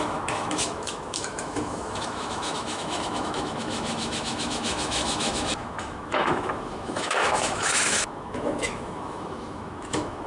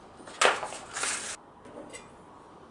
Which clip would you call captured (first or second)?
second